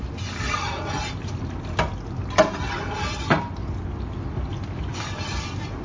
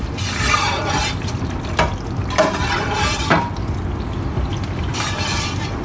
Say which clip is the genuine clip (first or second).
first